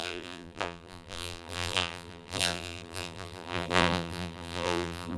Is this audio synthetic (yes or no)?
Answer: yes